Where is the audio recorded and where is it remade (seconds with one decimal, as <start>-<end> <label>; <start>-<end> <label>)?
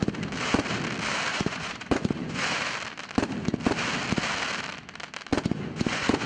0.0-1.3 recorded; 1.3-2.6 remade; 2.6-5.3 recorded; 5.3-6.3 remade